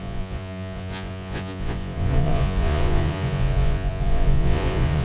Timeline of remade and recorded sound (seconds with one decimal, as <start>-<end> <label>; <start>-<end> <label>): 0.0-5.0 remade